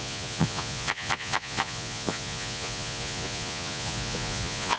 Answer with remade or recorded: remade